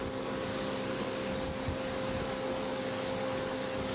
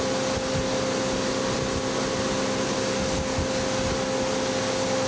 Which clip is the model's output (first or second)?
first